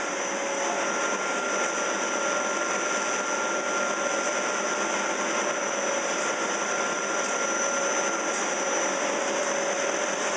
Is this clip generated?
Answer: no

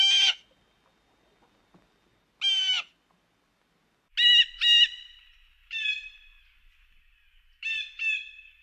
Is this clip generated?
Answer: no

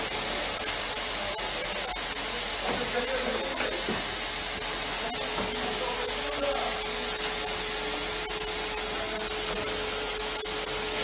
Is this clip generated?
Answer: no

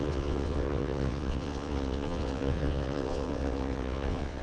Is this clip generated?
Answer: yes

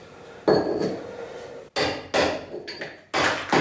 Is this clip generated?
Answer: no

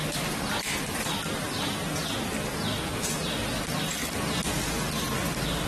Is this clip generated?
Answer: no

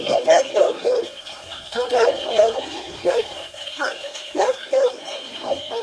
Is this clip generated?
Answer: yes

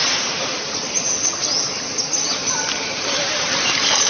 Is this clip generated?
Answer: no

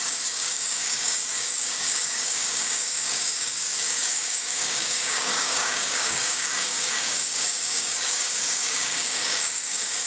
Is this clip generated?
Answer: yes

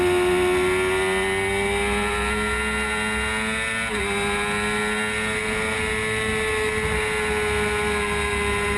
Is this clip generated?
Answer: no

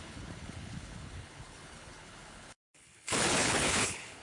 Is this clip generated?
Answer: yes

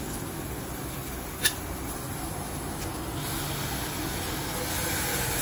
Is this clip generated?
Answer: no